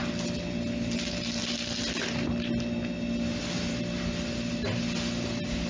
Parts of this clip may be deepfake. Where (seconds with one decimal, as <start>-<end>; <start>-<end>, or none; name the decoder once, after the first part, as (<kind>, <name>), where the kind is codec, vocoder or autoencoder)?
none

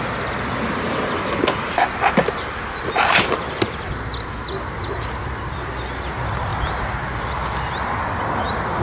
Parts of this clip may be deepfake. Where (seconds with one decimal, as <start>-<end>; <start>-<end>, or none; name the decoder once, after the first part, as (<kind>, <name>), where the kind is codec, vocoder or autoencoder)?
none

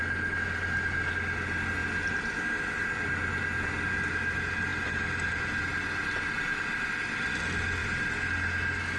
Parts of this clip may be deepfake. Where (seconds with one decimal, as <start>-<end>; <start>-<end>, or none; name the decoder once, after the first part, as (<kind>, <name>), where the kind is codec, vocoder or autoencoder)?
none

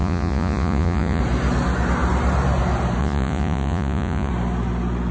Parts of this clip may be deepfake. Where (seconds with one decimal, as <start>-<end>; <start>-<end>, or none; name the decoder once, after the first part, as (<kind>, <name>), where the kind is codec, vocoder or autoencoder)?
0.0-1.2 (vocoder, Vocos); 3.0-4.3